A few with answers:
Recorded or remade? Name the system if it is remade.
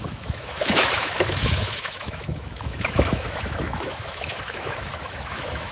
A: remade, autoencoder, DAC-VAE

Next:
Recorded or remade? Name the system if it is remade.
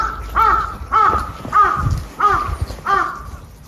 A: recorded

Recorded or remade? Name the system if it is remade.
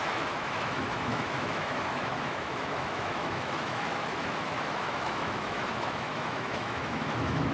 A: remade, autoencoder, DAC-VAE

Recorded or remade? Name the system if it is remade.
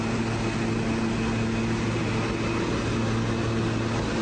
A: recorded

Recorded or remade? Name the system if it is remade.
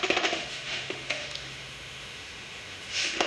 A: remade, autoencoder, DAC-VAE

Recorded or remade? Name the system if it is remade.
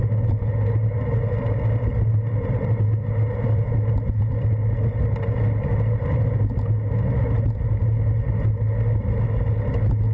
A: recorded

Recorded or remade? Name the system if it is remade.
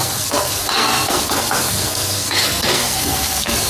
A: remade, codec, SNAC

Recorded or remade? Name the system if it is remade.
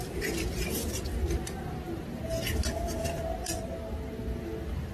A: recorded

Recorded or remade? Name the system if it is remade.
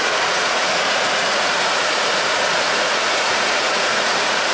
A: remade, vocoder, Vocos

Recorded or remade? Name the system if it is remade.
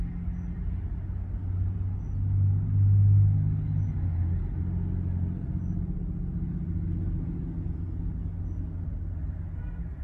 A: recorded